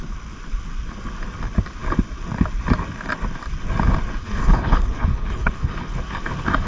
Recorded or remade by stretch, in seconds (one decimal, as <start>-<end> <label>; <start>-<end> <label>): 0.0-4.2 recorded; 4.2-5.9 remade; 5.9-6.7 recorded